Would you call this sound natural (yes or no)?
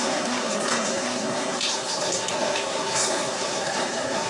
no